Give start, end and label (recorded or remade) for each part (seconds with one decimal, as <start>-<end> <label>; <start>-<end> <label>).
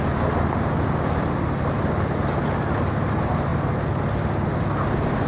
0.0-5.3 recorded